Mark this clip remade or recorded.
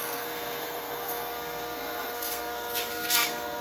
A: remade